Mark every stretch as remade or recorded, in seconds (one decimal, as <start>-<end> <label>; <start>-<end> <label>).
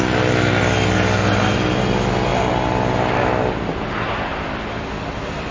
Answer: 0.0-5.5 recorded